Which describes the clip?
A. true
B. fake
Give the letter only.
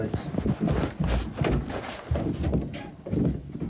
A